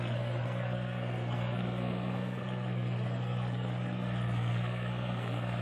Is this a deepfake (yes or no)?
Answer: yes